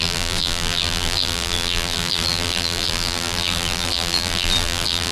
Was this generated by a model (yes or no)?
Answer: yes